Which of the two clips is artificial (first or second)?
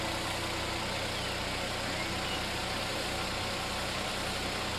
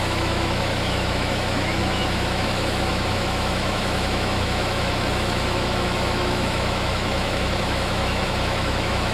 second